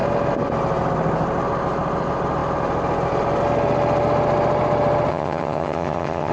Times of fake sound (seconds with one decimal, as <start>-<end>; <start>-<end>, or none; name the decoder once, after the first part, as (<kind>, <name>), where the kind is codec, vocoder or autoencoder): 5.1-6.3 (vocoder, HiFi-GAN)